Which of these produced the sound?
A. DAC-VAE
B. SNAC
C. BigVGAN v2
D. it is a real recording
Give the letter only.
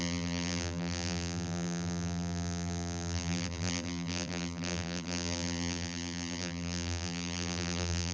C